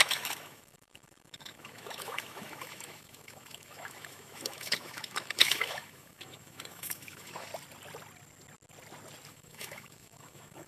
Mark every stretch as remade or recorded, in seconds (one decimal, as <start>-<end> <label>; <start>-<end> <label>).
0.0-7.5 remade; 7.5-9.3 recorded; 9.3-10.7 remade